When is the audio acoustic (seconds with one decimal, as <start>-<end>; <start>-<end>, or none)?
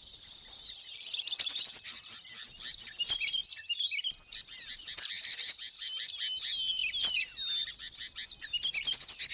0.0-9.3